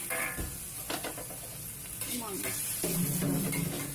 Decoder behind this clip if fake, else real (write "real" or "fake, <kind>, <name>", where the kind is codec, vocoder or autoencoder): real